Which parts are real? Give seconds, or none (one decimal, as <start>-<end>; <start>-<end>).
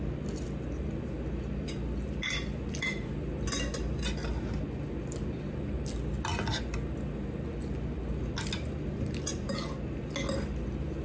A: 0.0-11.0